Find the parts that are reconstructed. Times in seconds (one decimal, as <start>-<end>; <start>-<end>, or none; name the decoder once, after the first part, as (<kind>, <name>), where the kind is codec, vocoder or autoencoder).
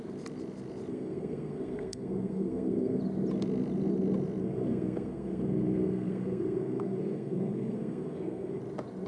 0.9-3.0 (codec, SNAC); 4.4-8.6